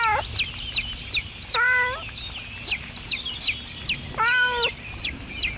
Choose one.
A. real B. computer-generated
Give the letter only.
A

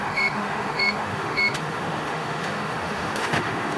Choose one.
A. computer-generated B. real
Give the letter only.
A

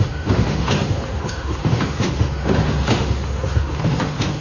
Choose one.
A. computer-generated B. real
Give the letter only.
A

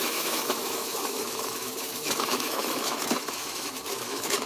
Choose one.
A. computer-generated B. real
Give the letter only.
A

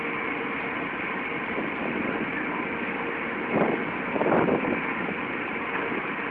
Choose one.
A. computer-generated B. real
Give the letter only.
B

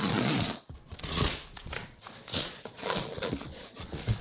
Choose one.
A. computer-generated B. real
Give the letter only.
A